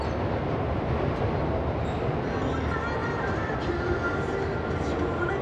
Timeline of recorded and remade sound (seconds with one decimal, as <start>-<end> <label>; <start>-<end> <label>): 0.0-3.0 recorded; 3.0-4.0 remade; 4.0-5.4 recorded